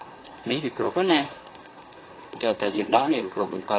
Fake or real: fake